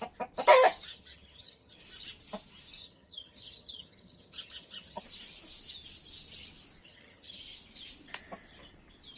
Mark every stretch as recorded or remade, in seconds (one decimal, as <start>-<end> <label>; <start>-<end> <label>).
0.0-0.9 recorded; 0.9-1.8 remade; 1.8-2.8 recorded; 2.8-5.0 remade; 5.0-6.8 recorded; 6.8-7.4 remade; 7.4-9.2 recorded

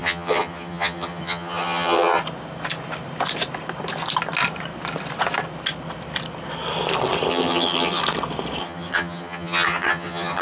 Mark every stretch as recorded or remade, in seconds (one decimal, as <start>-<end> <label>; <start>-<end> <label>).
0.0-2.2 remade; 2.2-7.3 recorded; 7.3-8.0 remade; 8.0-8.6 recorded; 8.6-10.4 remade

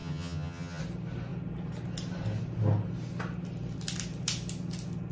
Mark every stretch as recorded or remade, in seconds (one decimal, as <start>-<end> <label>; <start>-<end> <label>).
0.0-0.8 remade; 0.8-5.1 recorded

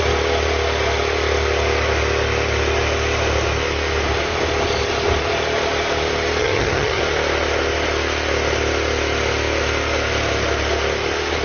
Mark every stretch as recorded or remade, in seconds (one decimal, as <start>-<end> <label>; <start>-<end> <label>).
0.0-6.4 recorded; 6.4-7.0 remade; 7.0-11.4 recorded

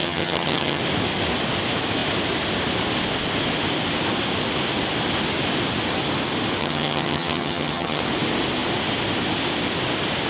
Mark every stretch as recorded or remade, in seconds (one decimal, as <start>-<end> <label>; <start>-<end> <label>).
0.0-0.8 remade; 0.8-6.6 recorded; 6.6-8.0 remade; 8.0-10.3 recorded

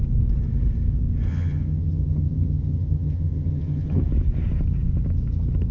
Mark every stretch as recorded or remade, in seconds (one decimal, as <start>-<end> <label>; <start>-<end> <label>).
0.0-1.3 recorded; 1.3-4.0 remade; 4.0-5.7 recorded

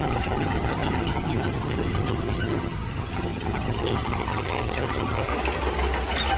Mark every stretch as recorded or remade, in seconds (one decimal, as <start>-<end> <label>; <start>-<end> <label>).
0.0-5.3 remade; 5.3-6.4 recorded